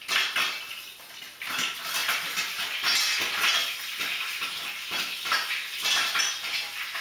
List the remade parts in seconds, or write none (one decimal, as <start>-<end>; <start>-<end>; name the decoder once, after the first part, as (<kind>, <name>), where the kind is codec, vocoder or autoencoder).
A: none